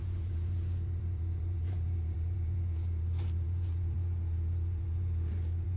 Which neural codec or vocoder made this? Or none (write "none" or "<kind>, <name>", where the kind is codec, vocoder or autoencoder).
vocoder, BigVGAN v2